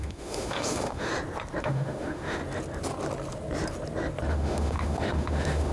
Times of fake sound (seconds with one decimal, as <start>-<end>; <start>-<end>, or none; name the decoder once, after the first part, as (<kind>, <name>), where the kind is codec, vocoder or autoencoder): 0.0-1.1 (autoencoder, DAC-VAE); 1.6-2.4; 4.3-5.7